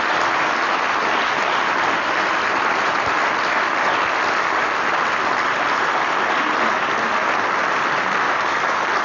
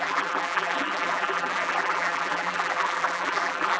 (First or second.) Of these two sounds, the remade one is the second